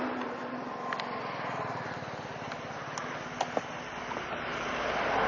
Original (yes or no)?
yes